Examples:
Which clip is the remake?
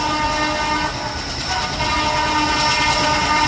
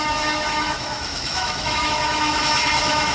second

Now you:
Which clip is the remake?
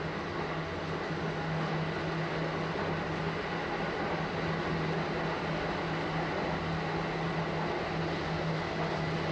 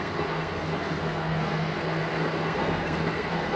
second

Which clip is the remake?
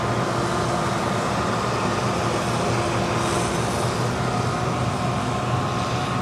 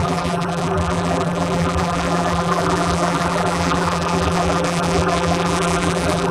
second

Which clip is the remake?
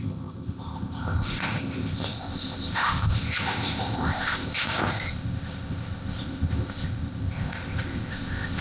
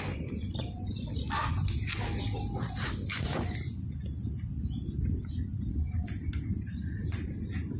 first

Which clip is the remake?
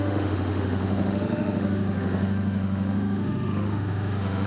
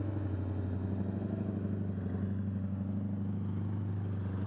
first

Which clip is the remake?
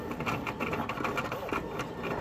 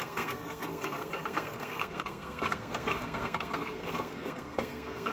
second